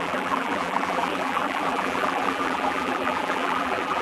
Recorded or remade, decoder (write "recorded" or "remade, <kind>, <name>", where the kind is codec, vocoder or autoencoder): remade, vocoder, BigVGAN v2